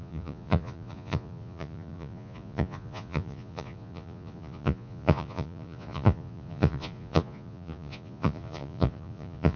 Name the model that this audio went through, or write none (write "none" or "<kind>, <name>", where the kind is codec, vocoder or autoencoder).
vocoder, Vocos